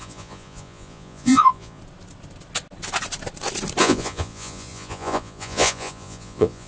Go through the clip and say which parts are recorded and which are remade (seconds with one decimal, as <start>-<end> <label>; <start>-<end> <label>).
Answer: 0.0-1.8 remade; 1.8-3.8 recorded; 3.8-6.7 remade